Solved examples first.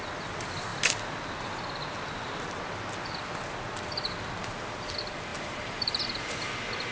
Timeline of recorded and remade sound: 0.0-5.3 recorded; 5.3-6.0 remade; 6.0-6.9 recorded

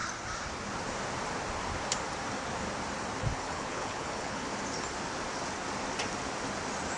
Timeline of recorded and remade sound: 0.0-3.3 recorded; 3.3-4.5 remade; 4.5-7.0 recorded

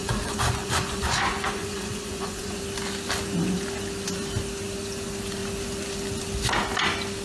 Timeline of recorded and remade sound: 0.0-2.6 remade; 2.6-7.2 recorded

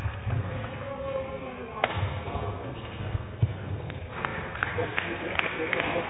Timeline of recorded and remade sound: 0.0-6.1 remade

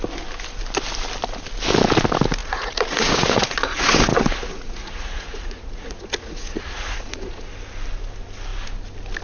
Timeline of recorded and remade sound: 0.0-2.4 recorded; 2.4-7.5 remade; 7.5-9.2 recorded

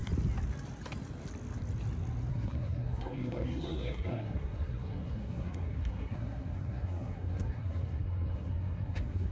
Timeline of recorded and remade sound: 0.0-2.3 recorded; 2.3-9.3 remade

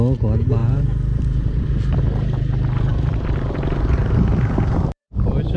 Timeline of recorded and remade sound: 0.0-0.6 recorded; 0.6-1.8 remade; 1.8-2.9 recorded; 2.9-4.0 remade; 4.0-5.6 recorded